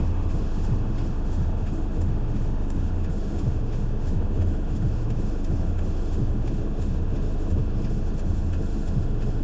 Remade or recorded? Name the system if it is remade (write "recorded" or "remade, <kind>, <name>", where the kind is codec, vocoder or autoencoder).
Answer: remade, autoencoder, DAC-VAE